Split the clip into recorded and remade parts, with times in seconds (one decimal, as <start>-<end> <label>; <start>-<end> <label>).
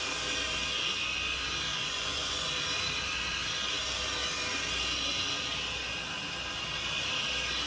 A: 0.0-1.7 recorded; 1.7-2.5 remade; 2.5-7.7 recorded